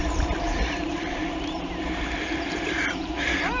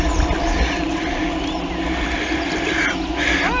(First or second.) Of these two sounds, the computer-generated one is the first